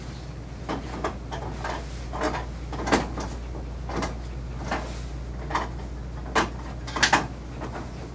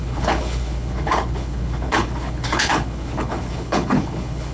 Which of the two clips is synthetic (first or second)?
second